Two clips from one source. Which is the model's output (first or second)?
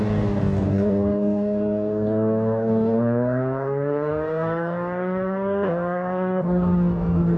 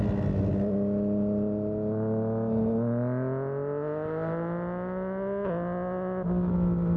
first